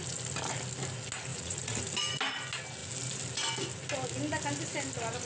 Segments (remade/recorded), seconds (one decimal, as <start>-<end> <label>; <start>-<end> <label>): 0.0-1.3 recorded; 1.3-1.8 remade; 1.8-5.3 recorded